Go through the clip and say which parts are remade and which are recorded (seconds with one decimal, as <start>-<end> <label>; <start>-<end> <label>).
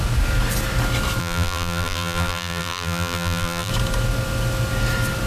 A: 0.0-1.2 recorded; 1.2-3.7 remade; 3.7-5.3 recorded